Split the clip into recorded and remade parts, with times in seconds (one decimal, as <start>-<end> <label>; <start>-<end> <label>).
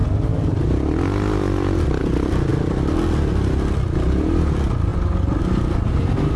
0.0-6.4 recorded